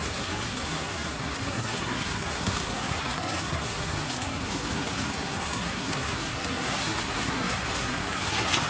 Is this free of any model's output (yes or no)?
no